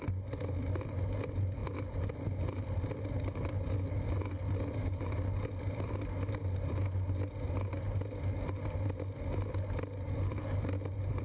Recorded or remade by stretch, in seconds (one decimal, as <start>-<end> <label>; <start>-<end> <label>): 0.0-11.2 recorded